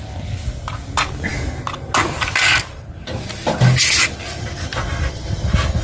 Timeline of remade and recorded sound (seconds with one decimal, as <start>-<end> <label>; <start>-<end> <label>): 0.0-5.8 recorded